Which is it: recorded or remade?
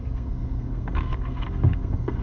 remade